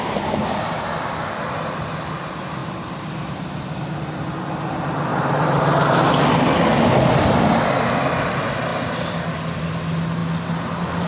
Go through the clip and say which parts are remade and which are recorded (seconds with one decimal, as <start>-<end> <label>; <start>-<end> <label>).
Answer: 0.0-2.6 recorded; 2.6-3.6 remade; 3.6-5.1 recorded; 5.1-6.1 remade; 6.1-11.1 recorded